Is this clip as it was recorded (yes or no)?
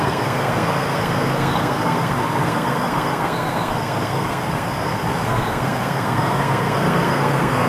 no